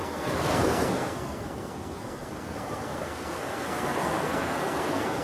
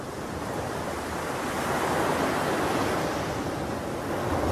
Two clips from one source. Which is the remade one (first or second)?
first